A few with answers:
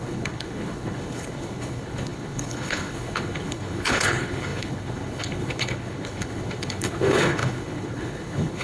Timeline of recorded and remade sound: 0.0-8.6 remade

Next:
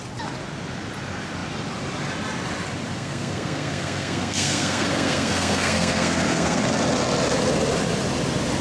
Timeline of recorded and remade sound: 0.0-2.9 recorded; 2.9-6.6 remade; 6.6-8.6 recorded

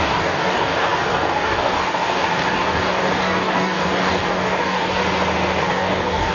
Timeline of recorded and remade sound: 0.0-5.0 remade; 5.0-5.6 recorded; 5.6-6.3 remade

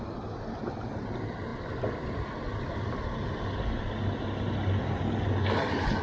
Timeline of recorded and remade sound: 0.0-6.0 recorded